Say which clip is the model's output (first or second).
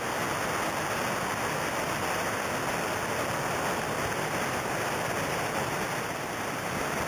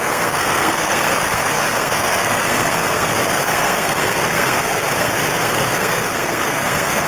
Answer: second